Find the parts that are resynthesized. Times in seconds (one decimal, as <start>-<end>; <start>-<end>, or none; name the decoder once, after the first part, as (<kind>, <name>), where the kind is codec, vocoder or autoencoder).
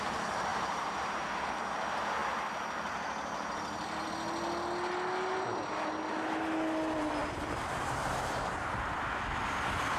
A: 0.5-1.5 (vocoder, BigVGAN v2); 7.2-8.4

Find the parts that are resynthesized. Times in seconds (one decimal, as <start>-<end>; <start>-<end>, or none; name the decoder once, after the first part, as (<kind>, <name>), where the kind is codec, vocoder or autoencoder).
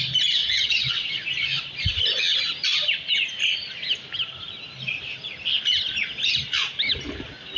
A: 0.4-1.1 (vocoder, WaveNeXt)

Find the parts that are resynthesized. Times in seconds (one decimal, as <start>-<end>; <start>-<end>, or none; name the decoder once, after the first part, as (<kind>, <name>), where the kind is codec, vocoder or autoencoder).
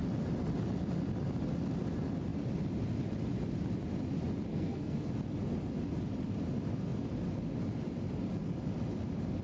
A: 4.5-5.1 (codec, SNAC)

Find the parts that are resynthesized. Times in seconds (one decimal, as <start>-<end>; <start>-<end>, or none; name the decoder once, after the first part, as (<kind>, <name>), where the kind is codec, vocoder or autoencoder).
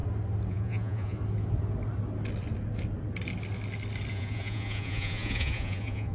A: 0.5-1.2 (vocoder, Vocos); 4.1-6.1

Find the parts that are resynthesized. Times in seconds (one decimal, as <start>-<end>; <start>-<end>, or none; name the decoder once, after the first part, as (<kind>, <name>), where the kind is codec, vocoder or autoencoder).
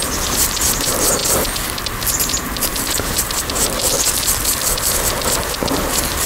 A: none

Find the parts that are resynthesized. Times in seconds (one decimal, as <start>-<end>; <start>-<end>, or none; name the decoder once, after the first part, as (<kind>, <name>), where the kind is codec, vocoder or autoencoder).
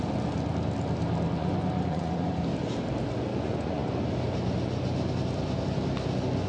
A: 1.4-2.4 (vocoder, Vocos); 3.3-4.0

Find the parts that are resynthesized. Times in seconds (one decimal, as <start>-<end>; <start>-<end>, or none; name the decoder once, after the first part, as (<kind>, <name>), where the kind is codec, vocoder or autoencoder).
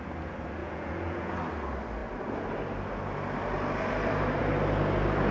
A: 0.6-1.3 (vocoder, Vocos)